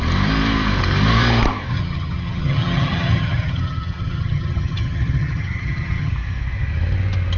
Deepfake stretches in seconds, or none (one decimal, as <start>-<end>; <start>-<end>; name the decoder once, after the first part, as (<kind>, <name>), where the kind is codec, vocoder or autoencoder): 1.7-6.1 (vocoder, HiFi-GAN)